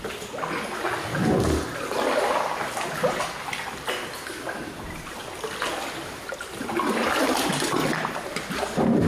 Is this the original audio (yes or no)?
yes